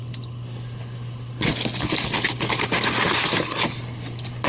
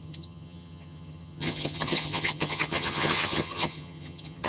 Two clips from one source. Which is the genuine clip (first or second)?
first